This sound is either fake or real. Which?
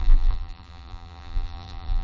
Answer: fake